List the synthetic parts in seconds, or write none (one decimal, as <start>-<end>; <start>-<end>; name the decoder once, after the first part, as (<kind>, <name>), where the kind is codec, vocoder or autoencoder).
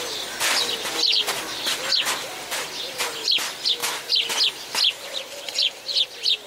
none